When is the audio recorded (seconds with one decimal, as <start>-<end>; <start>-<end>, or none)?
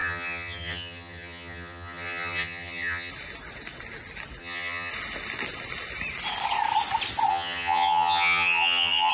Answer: 3.1-4.4; 4.9-7.3